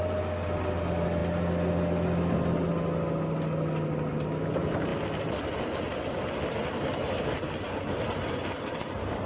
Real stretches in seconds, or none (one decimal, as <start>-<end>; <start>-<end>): 0.0-9.3